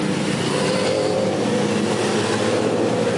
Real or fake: real